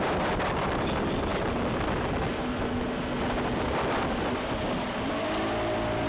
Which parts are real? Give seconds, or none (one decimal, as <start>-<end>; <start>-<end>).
0.0-6.1